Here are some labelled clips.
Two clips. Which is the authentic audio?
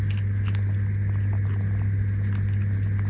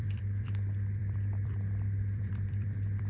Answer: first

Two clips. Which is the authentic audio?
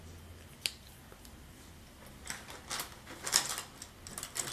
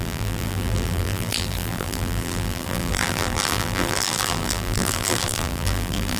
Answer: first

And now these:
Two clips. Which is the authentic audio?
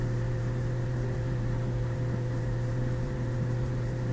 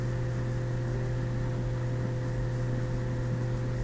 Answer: second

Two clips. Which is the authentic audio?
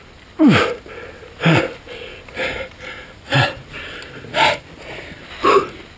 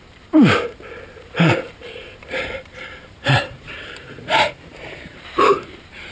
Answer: first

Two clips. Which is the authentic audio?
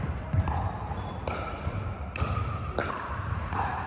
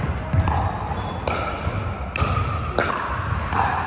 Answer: second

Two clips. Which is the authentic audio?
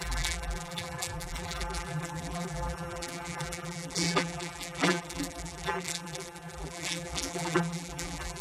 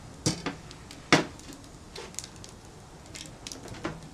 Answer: second